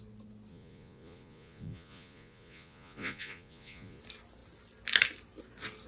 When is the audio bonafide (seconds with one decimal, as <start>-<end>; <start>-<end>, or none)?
0.0-0.5; 4.0-5.9